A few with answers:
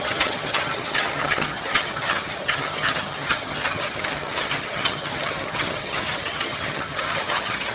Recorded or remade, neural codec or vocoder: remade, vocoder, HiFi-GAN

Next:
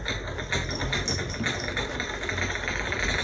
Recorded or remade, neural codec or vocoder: recorded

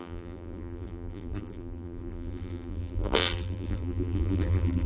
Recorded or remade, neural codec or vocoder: remade, vocoder, BigVGAN v2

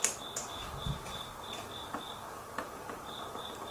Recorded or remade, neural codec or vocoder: recorded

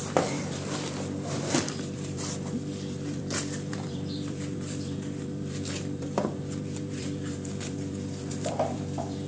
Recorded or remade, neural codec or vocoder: remade, vocoder, BigVGAN v2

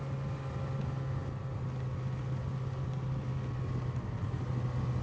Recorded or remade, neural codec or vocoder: recorded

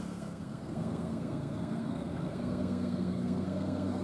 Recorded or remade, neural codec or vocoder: remade, codec, SNAC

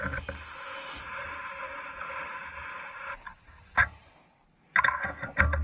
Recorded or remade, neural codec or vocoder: recorded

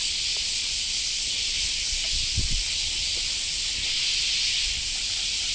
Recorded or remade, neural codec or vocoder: recorded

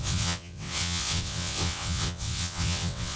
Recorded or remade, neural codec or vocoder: remade, vocoder, WaveNeXt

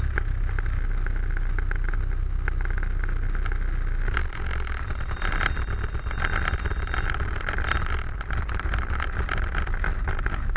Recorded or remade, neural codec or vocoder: recorded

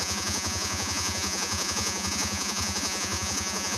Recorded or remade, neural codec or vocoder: remade, vocoder, Vocos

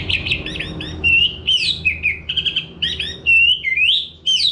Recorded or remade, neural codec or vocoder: recorded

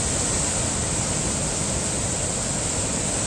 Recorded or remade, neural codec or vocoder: recorded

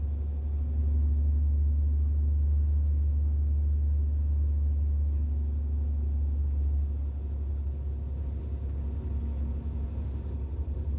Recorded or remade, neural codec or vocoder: recorded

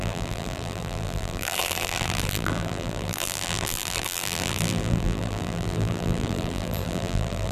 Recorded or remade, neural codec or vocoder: remade, vocoder, BigVGAN v2